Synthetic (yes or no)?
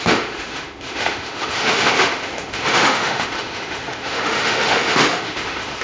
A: yes